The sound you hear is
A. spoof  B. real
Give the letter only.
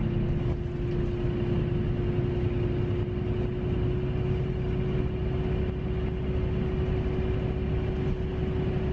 B